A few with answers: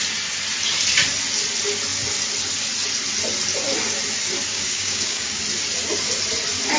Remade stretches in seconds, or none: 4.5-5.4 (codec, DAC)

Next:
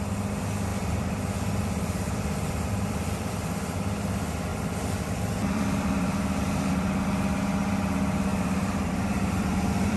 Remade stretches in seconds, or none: 0.7-3.3 (vocoder, BigVGAN v2); 4.5-6.2; 8.3-10.0

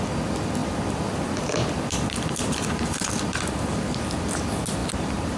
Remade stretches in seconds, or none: 0.6-3.8 (vocoder, BigVGAN v2); 4.8-5.4

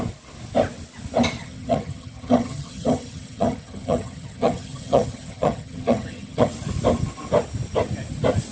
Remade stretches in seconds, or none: 1.4-6.5 (vocoder, HiFi-GAN)

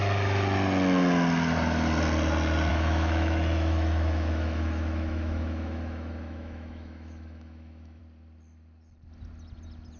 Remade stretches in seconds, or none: 2.7-8.0 (autoencoder, DAC-VAE)